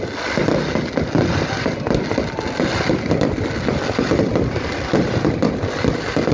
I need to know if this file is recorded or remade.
recorded